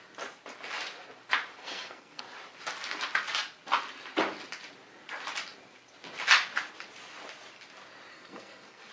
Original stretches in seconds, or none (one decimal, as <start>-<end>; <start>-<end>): 0.0-1.6; 2.2-8.1